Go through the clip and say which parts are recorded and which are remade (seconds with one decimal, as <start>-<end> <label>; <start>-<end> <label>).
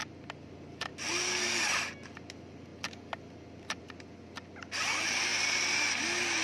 0.0-6.4 recorded